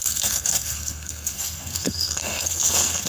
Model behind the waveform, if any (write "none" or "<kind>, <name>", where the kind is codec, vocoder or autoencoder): codec, SNAC